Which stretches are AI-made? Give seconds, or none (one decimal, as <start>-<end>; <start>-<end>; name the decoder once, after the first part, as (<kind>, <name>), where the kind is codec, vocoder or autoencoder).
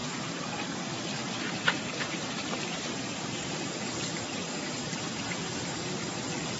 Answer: 0.0-0.5 (vocoder, BigVGAN v2); 1.2-5.2